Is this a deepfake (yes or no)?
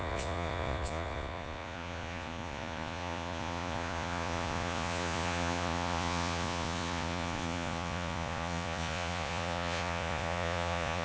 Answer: yes